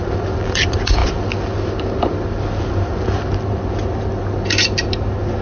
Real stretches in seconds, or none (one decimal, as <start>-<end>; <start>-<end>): 0.0-5.4